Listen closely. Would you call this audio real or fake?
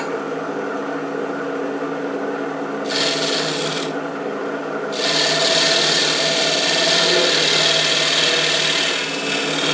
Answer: real